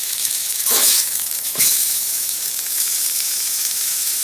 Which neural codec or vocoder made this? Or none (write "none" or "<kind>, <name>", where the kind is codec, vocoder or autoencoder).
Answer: autoencoder, DAC-VAE